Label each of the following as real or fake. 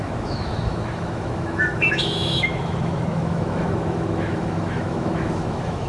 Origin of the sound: fake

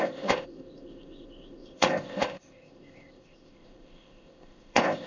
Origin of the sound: fake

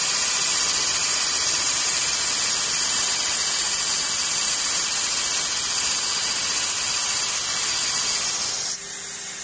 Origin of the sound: real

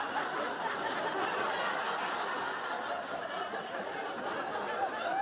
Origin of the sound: real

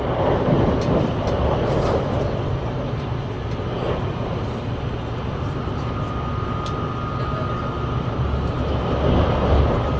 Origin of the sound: real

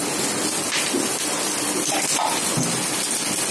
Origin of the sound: real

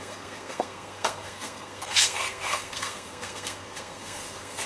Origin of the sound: fake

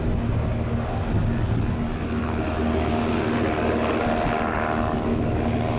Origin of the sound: real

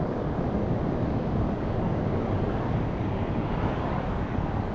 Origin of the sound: fake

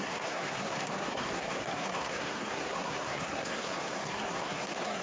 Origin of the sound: fake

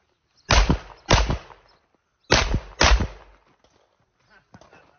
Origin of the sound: real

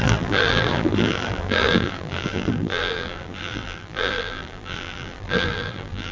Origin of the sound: fake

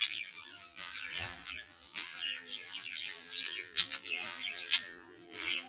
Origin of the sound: fake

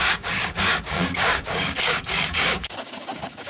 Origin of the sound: fake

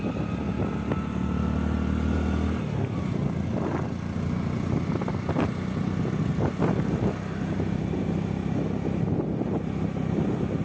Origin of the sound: real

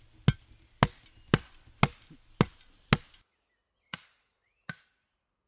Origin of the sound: real